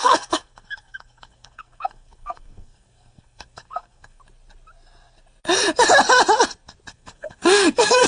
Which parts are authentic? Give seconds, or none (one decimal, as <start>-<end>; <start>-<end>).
4.2-6.9